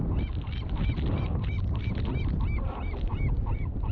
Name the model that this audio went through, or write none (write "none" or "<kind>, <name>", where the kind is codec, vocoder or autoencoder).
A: vocoder, BigVGAN v2